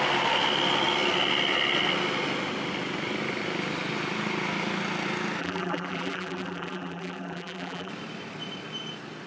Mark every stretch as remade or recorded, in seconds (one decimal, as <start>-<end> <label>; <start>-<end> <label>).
0.0-5.4 recorded; 5.4-7.9 remade; 7.9-9.3 recorded